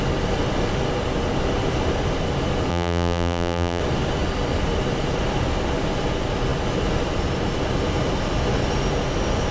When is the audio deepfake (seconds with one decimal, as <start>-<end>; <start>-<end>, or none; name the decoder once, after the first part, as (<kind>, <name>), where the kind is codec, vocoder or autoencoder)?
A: 2.7-3.8 (vocoder, BigVGAN v2)